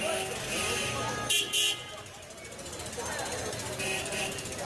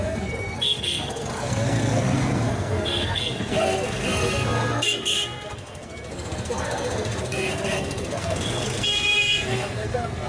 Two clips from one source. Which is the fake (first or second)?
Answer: second